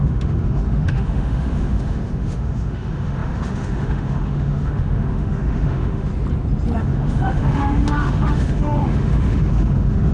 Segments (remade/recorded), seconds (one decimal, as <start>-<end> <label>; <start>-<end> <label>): 0.0-6.1 remade; 6.1-6.8 recorded; 6.8-10.1 remade